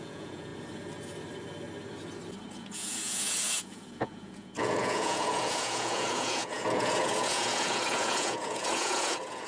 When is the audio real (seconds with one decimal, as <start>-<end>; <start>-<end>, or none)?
0.5-2.5